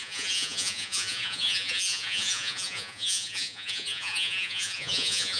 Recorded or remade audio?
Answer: remade